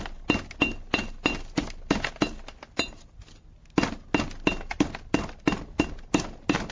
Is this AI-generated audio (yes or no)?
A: no